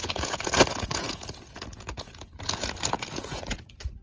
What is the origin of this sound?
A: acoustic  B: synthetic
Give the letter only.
B